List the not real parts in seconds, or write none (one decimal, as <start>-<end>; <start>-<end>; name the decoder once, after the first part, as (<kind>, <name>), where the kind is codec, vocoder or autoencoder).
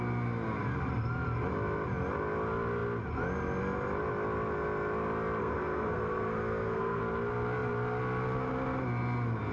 5.4-7.0 (codec, SNAC)